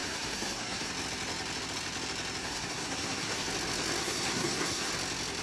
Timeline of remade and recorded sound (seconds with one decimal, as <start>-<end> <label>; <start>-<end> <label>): 0.0-0.9 remade; 0.9-2.4 recorded; 2.4-3.5 remade; 3.5-4.0 recorded; 4.0-4.9 remade; 4.9-5.4 recorded